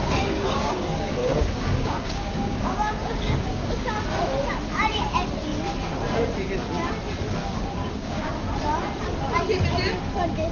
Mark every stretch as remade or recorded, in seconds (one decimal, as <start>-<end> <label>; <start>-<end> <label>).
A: 0.0-3.7 remade; 3.7-7.4 recorded; 7.4-8.3 remade; 8.3-10.5 recorded

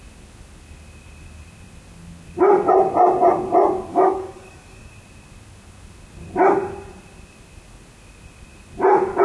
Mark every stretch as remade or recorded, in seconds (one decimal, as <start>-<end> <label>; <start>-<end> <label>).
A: 0.0-3.9 recorded; 3.9-4.9 remade; 4.9-9.2 recorded

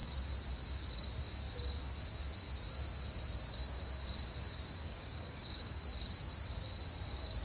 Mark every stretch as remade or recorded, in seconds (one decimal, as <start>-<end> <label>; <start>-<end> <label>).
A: 0.0-4.8 recorded; 4.8-5.8 remade; 5.8-7.4 recorded